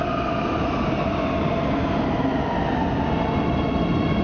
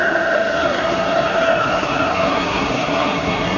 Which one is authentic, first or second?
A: first